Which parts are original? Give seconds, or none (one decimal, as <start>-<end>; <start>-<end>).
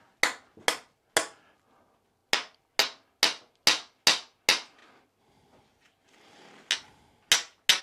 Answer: 0.0-7.8